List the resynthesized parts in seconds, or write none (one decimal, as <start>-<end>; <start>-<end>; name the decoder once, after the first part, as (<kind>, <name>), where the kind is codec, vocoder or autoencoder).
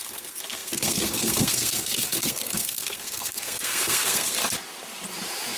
0.0-4.4 (codec, SNAC)